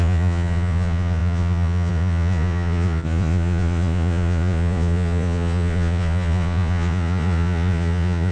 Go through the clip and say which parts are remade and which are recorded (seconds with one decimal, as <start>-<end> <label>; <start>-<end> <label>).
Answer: 0.0-8.3 remade